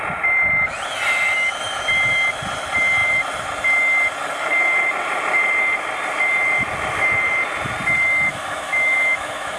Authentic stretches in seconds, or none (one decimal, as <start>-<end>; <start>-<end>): 0.0-8.3